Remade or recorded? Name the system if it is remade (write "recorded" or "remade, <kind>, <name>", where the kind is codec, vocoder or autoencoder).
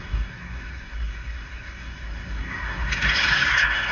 remade, codec, SNAC